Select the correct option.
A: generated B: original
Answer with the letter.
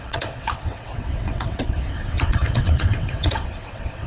A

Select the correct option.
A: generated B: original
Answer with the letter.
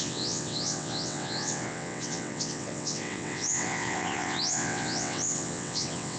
A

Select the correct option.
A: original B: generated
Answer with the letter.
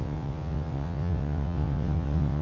B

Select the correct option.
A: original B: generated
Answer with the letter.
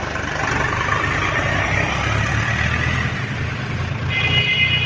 A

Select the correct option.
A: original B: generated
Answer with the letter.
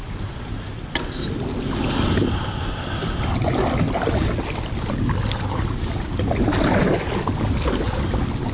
A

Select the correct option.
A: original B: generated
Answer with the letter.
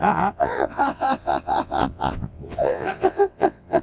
B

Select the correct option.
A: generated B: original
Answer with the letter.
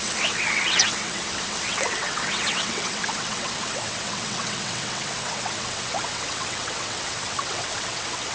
A